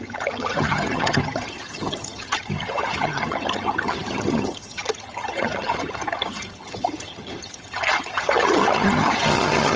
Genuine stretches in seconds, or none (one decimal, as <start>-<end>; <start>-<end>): none